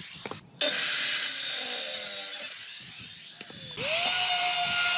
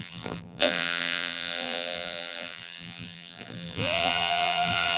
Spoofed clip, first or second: second